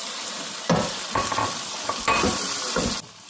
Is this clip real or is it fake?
real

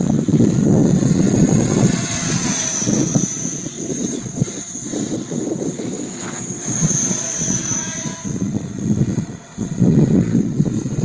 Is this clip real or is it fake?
fake